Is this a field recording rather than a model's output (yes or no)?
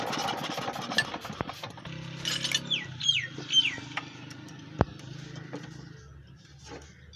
yes